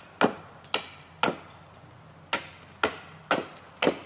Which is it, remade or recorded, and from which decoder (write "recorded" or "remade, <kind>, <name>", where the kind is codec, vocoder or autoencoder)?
recorded